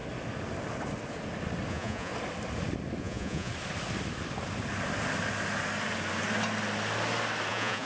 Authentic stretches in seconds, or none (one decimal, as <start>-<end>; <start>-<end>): 0.0-1.7; 2.1-3.0; 3.5-7.5